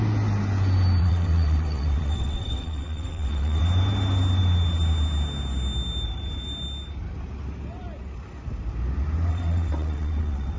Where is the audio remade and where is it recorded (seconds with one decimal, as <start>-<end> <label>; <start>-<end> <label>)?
0.0-1.0 recorded; 1.0-3.6 remade; 3.6-9.3 recorded; 9.3-10.6 remade